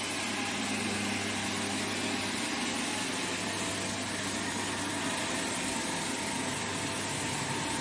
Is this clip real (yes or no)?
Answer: yes